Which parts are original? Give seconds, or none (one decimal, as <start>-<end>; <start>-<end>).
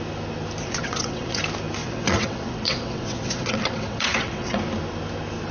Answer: 0.0-0.6; 1.4-1.8; 4.6-5.5